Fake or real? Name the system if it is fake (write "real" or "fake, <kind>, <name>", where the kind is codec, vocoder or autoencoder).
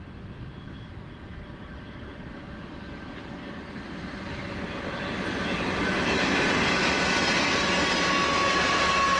real